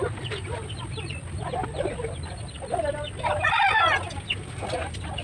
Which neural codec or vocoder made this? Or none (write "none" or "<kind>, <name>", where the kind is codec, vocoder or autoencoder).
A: none